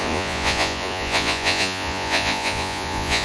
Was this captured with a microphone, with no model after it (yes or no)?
no